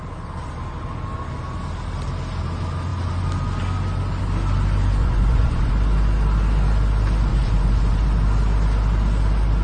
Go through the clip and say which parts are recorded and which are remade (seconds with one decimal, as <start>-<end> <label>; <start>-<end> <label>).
0.0-5.0 recorded; 5.0-5.7 remade; 5.7-7.3 recorded; 7.3-8.0 remade; 8.0-9.6 recorded